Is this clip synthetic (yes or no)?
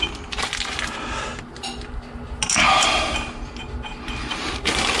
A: no